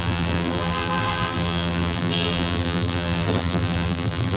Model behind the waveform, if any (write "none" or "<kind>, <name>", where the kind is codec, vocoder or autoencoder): vocoder, BigVGAN v2